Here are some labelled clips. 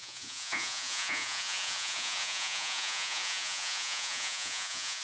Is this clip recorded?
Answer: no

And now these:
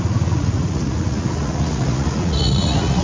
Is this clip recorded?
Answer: no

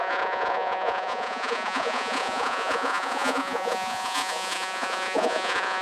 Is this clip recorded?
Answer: no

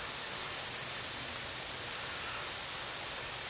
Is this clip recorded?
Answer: yes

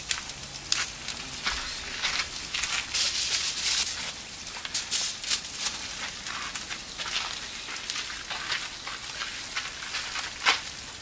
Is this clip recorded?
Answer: yes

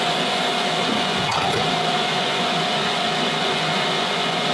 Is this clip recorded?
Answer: no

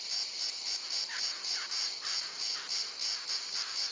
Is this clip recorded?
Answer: yes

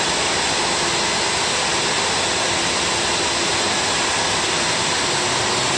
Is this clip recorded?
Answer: yes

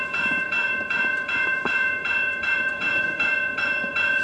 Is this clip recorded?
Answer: no